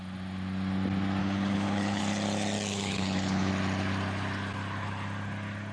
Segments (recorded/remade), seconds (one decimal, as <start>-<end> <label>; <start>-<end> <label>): 0.0-1.2 recorded; 1.2-2.0 remade; 2.0-2.7 recorded; 2.7-3.5 remade; 3.5-5.7 recorded